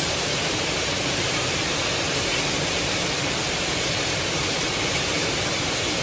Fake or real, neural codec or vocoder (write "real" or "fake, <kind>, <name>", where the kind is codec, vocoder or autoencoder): fake, vocoder, BigVGAN v2